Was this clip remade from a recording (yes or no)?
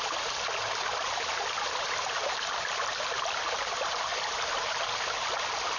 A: no